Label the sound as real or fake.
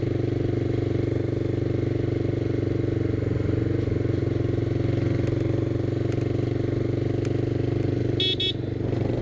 real